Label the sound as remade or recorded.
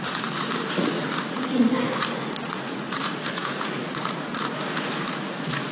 remade